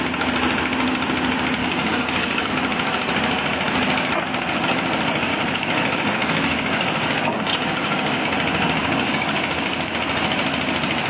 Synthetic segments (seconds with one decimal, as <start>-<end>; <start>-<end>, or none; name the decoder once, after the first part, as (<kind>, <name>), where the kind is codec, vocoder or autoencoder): 1.6-2.5 (codec, DAC); 5.3-8.2; 8.8-9.9